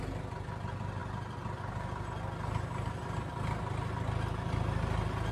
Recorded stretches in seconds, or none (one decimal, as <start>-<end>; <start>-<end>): 0.0-5.3